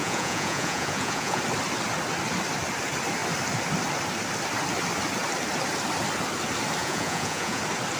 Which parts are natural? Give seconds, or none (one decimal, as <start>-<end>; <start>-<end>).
1.4-6.8; 7.6-8.0